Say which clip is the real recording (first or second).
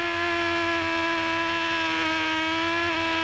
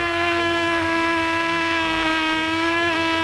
first